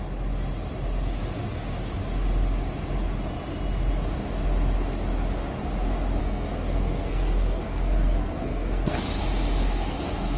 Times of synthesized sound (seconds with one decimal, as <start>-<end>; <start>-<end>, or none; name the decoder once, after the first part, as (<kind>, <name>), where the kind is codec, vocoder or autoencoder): 6.2-9.2 (codec, SNAC); 9.6-10.4